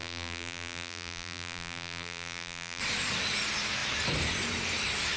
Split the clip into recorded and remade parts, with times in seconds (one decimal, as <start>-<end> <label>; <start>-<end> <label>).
0.0-2.8 remade; 2.8-5.2 recorded